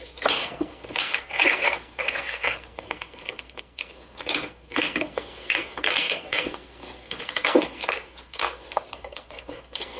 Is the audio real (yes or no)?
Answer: no